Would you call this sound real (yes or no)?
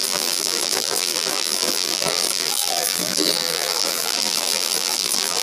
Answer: no